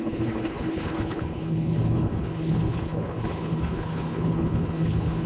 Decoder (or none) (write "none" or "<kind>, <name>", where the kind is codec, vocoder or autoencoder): codec, HILCodec